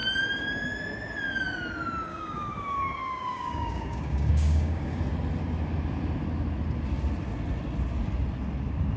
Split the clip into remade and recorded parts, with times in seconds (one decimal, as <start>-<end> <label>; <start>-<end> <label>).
0.0-2.1 recorded; 2.1-5.0 remade; 5.0-9.0 recorded